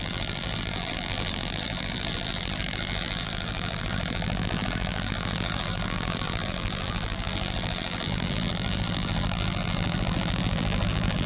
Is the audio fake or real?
fake